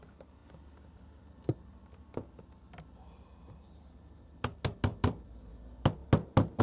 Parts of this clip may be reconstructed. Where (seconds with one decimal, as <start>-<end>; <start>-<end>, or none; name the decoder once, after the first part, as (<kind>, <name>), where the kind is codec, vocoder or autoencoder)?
4.9-5.5 (vocoder, BigVGAN v2)